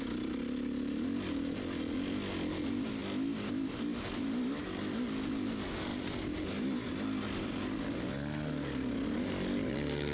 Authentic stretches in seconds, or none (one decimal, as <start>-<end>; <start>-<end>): 0.0-5.9; 6.9-10.1